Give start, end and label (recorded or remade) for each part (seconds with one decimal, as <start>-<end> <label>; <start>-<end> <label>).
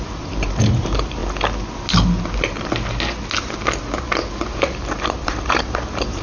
0.0-1.2 remade; 1.2-4.3 recorded; 4.3-6.2 remade